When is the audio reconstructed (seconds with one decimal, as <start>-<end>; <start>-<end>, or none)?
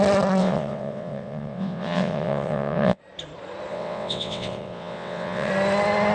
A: 0.4-3.0; 3.7-5.5